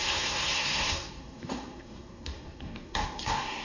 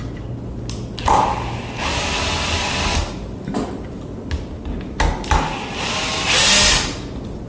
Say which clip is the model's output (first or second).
first